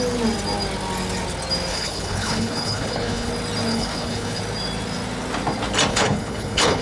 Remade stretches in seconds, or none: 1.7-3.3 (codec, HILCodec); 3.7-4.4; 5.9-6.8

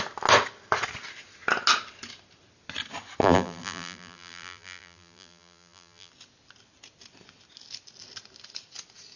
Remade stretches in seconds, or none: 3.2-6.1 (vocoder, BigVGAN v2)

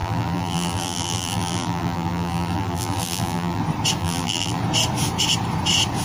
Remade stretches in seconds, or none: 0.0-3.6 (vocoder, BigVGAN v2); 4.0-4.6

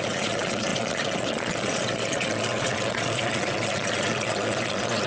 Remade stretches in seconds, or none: 0.0-5.1 (vocoder, Vocos)